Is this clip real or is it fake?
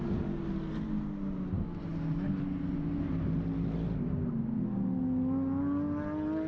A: real